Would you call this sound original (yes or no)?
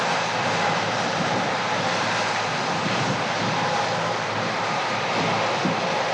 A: no